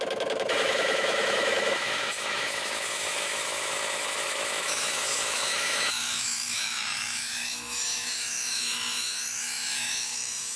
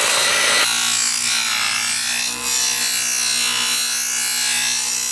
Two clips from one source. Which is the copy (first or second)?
first